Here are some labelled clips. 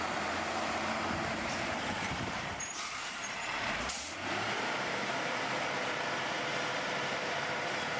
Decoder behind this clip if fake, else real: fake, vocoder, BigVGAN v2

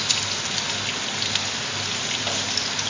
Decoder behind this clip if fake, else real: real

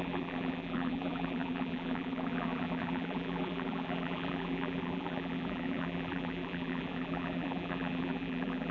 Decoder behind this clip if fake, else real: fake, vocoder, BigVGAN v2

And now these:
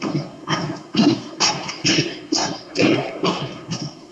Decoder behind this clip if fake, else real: fake, codec, SNAC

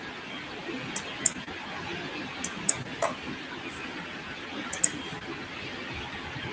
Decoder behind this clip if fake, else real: real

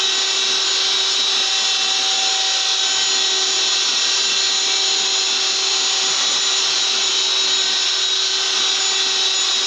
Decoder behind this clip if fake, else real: real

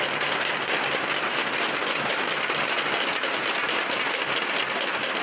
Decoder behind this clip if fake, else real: real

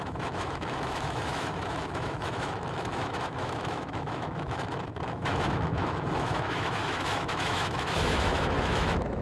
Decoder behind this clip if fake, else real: fake, autoencoder, DAC-VAE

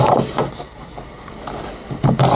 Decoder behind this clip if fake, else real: real